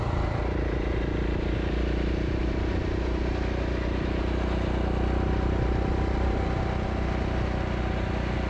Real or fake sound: real